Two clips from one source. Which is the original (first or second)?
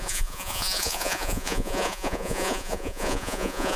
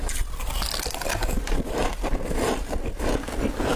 second